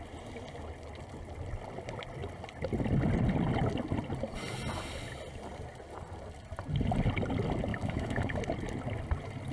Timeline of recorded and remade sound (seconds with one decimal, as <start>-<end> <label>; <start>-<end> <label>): 0.0-7.7 recorded; 7.7-8.4 remade; 8.4-9.5 recorded